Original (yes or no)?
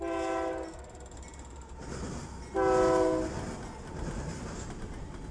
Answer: yes